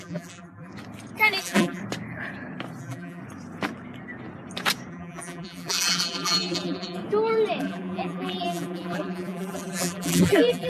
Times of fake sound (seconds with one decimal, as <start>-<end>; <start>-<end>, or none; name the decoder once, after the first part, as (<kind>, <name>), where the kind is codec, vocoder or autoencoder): 0.0-0.7 (vocoder, BigVGAN v2); 1.4-1.8; 2.8-3.2; 4.9-7.0; 7.6-10.7